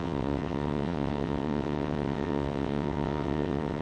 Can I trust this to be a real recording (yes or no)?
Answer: no